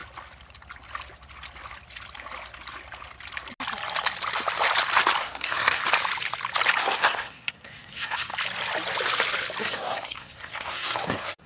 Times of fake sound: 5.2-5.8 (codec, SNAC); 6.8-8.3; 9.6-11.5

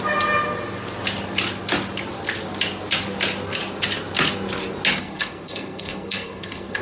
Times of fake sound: 5.0-6.8 (codec, SNAC)